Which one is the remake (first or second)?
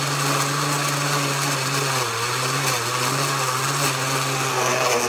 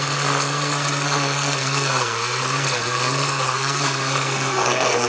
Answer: second